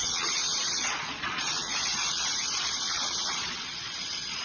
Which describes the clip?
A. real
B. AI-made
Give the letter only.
B